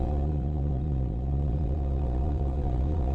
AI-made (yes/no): yes